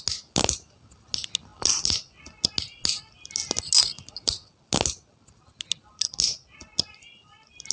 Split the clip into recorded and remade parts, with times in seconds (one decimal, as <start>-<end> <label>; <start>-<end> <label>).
0.0-7.7 recorded